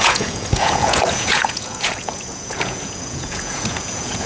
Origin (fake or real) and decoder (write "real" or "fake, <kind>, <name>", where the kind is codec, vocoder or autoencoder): fake, vocoder, Vocos